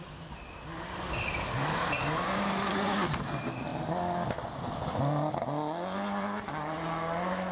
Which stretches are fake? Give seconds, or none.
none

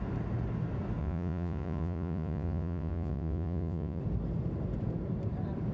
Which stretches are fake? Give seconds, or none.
1.0-4.0 (vocoder, Vocos)

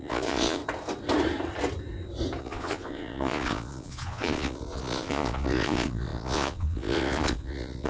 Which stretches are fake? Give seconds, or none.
0.0-0.6 (vocoder, Vocos); 2.4-7.9

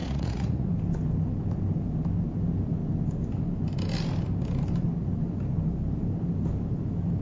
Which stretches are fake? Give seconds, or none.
0.0-0.7 (vocoder, Vocos)